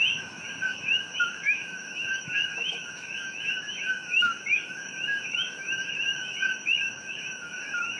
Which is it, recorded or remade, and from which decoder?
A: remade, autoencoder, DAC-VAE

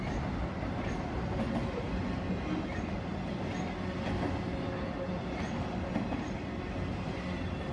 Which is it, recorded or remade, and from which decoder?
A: recorded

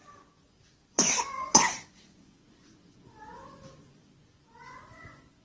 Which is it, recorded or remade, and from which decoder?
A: remade, vocoder, Vocos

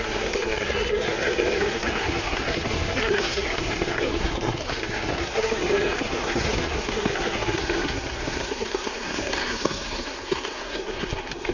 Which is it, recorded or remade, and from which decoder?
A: remade, codec, SNAC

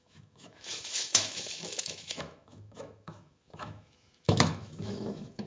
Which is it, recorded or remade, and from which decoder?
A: remade, autoencoder, DAC-VAE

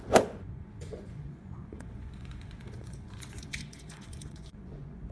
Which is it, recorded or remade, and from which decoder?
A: remade, vocoder, Vocos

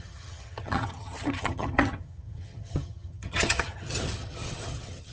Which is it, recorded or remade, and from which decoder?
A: remade, vocoder, HiFi-GAN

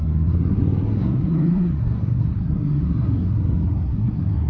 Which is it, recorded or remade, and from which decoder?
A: remade, codec, SNAC